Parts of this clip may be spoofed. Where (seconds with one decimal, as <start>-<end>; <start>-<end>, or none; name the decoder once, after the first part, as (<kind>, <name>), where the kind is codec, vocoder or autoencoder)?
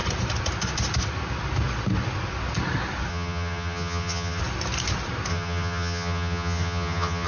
3.1-4.4 (vocoder, HiFi-GAN); 5.3-7.3